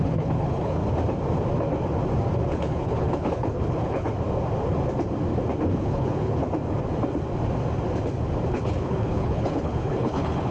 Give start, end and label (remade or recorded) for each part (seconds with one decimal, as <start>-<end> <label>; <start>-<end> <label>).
0.0-0.8 remade; 0.8-2.5 recorded; 2.5-4.1 remade; 4.1-5.8 recorded; 5.8-6.4 remade; 6.4-8.5 recorded; 8.5-10.5 remade